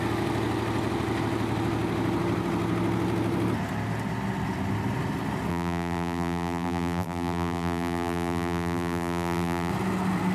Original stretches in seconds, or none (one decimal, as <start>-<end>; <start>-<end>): 0.0-5.5; 9.7-10.3